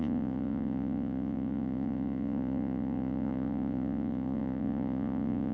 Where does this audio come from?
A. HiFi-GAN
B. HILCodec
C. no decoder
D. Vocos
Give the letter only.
D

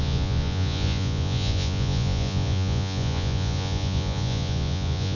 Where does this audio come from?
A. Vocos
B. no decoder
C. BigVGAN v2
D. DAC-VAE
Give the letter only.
A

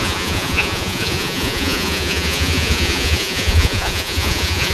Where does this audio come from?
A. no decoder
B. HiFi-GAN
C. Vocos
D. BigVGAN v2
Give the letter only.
C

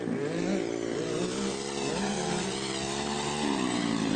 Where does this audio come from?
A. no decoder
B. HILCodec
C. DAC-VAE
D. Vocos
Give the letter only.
A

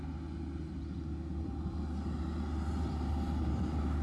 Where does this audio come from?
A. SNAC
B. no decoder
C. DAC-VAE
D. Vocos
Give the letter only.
B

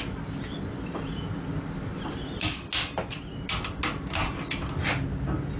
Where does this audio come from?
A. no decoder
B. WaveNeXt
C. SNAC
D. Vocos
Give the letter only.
A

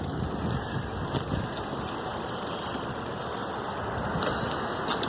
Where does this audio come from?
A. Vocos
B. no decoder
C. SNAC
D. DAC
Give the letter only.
B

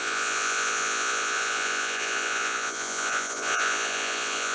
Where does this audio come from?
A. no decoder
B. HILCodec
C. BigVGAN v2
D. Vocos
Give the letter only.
D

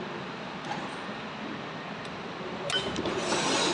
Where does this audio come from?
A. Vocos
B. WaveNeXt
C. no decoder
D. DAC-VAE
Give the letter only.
C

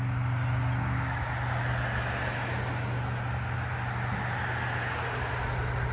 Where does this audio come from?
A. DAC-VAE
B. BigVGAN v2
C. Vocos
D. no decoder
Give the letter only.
D